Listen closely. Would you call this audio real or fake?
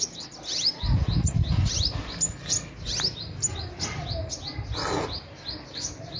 real